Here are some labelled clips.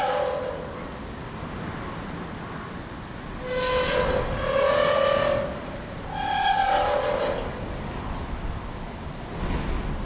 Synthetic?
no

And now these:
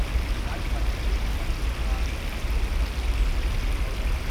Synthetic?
no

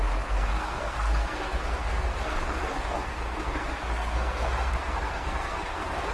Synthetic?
yes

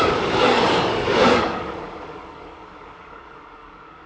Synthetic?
yes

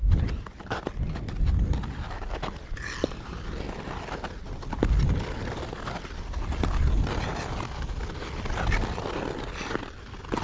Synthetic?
no